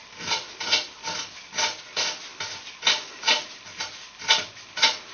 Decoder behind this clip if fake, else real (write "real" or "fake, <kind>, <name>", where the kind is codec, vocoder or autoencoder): real